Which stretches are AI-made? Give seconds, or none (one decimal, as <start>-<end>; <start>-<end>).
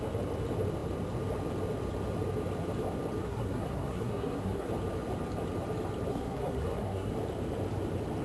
3.2-4.7; 6.1-7.1